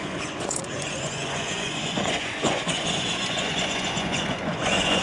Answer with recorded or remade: remade